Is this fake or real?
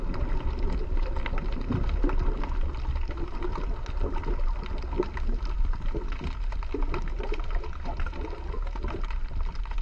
real